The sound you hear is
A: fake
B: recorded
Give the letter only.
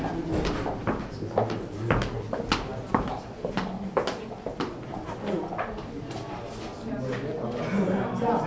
B